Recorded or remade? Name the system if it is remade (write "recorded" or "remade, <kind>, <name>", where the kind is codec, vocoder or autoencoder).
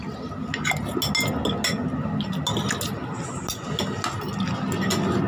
recorded